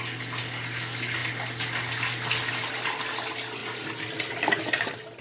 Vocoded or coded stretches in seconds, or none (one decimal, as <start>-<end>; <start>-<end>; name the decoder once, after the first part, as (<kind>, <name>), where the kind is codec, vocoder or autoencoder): none